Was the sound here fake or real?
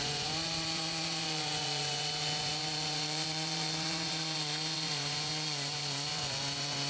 fake